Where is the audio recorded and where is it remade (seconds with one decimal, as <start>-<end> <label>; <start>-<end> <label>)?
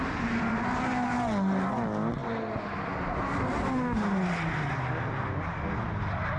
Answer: 0.0-6.4 recorded